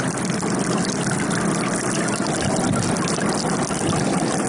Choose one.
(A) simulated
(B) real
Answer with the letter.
B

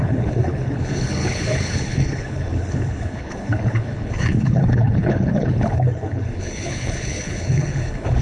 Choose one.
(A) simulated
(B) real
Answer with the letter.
A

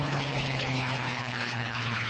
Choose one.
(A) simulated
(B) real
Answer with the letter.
A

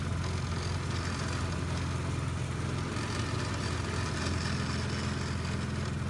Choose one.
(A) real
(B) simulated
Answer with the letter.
A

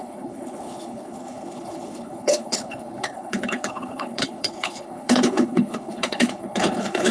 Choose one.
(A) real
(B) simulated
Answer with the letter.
B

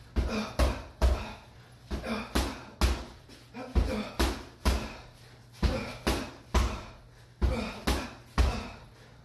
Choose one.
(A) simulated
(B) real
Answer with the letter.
B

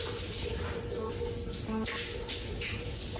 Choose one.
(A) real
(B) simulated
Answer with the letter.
A